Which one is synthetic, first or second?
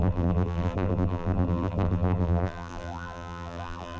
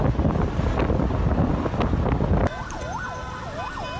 first